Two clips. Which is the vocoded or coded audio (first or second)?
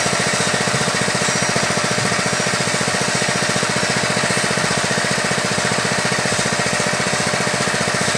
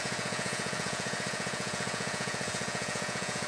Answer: second